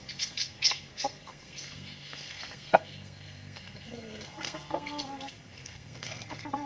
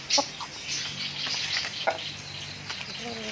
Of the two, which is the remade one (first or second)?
first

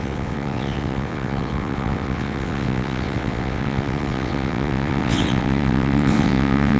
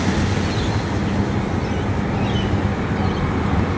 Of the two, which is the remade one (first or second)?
first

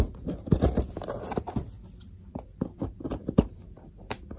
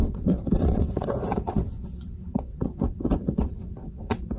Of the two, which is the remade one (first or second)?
second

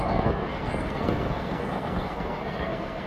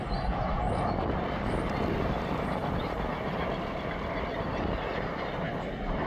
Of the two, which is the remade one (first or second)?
first